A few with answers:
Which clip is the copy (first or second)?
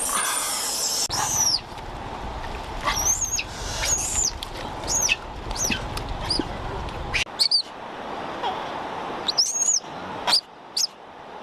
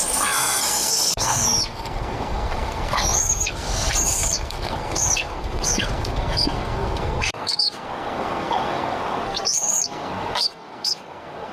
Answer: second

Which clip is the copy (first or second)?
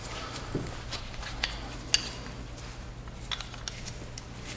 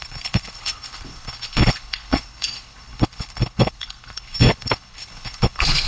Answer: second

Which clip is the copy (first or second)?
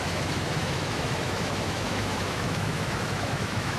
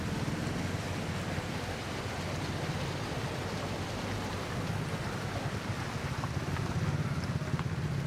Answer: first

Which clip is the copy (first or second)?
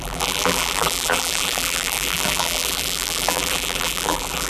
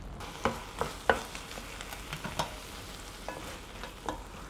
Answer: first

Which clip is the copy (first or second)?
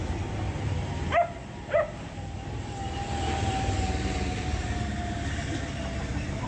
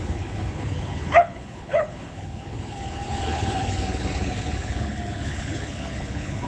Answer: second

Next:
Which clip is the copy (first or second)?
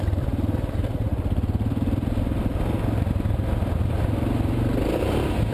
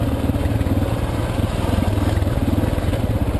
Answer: first